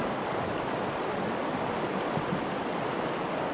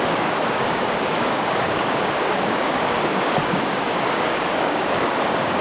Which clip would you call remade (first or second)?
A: second